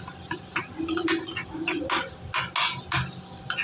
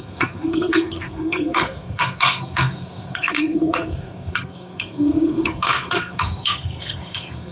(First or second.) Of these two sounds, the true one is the first